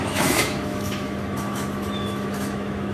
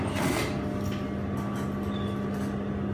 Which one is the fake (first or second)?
first